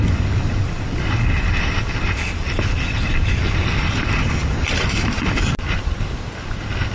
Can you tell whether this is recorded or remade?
recorded